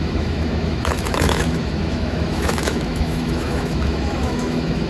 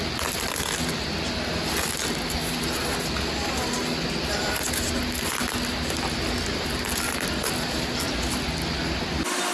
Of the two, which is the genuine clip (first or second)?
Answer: second